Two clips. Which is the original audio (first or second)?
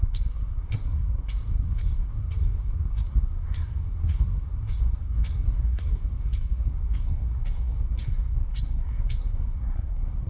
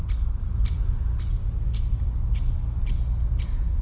second